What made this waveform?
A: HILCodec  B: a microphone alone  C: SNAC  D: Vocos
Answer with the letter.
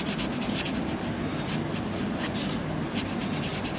B